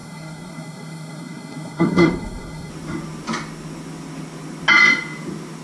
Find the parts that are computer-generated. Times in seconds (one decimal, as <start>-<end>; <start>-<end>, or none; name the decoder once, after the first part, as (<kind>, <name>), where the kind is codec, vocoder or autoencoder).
0.0-2.7 (codec, SNAC)